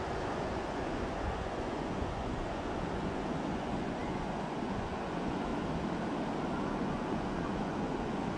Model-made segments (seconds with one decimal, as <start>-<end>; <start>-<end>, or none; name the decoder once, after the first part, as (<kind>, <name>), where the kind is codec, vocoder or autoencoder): 0.0-5.5 (vocoder, Vocos); 6.5-8.4